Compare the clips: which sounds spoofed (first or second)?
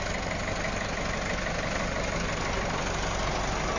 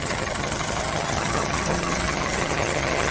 second